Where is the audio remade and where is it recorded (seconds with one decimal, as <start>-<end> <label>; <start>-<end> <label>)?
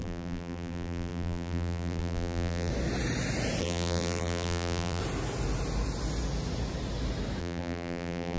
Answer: 0.0-2.7 remade; 2.7-3.6 recorded; 3.6-5.0 remade; 5.0-7.4 recorded; 7.4-8.4 remade